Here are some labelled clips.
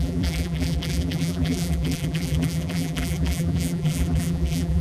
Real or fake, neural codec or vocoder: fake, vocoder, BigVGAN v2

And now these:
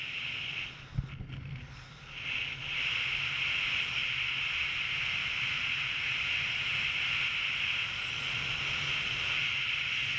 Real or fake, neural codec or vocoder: real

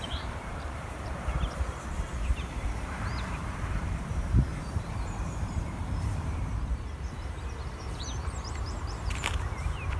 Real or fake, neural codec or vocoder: fake, vocoder, BigVGAN v2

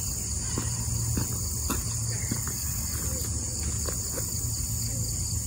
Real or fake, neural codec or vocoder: real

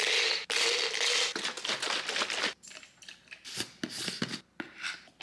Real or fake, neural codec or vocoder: real